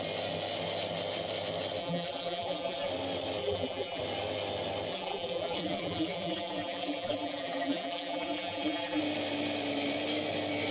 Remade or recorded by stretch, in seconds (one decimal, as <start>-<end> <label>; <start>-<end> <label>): 0.0-1.8 recorded; 1.8-2.9 remade; 2.9-3.4 recorded; 3.4-4.0 remade; 4.0-4.9 recorded; 4.9-9.0 remade; 9.0-10.7 recorded